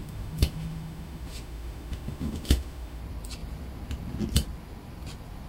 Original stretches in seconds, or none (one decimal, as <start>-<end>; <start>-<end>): 3.0-5.5